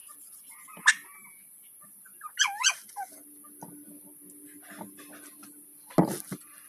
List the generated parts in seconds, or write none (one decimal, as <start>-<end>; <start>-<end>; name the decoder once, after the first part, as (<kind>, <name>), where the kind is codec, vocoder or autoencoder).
none